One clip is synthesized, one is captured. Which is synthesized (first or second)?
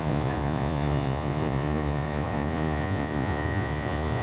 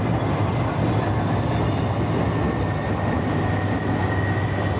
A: first